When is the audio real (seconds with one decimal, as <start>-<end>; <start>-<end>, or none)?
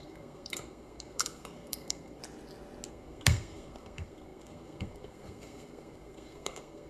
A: 2.2-2.9